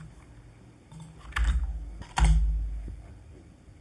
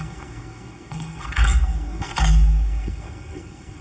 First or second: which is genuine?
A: first